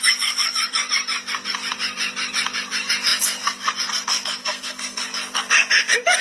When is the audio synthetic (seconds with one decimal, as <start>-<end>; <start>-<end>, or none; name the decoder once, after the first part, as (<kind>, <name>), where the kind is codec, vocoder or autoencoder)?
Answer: 4.4-5.0 (codec, SNAC)